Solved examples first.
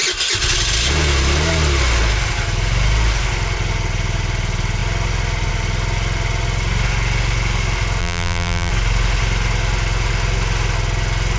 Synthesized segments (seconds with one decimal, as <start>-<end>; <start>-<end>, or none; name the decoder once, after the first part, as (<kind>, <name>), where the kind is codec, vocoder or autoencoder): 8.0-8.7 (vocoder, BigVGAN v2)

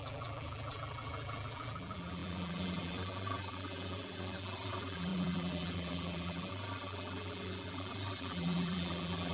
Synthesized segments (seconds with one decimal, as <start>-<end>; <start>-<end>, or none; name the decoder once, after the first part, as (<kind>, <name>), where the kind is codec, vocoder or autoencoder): 0.0-9.3 (vocoder, BigVGAN v2)

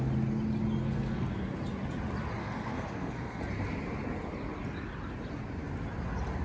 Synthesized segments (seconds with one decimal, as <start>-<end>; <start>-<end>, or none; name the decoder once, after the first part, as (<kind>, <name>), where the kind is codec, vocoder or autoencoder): 0.8-1.3 (codec, SNAC); 2.4-3.4